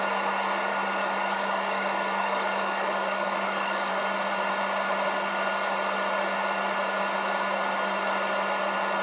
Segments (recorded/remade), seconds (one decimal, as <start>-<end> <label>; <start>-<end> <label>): 0.0-0.7 recorded; 0.7-3.9 remade; 3.9-9.0 recorded